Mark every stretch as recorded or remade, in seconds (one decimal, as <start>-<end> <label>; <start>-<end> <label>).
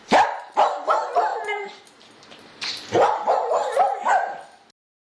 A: 0.0-1.3 recorded; 1.3-2.7 remade; 2.7-5.1 recorded